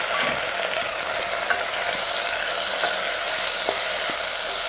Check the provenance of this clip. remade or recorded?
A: recorded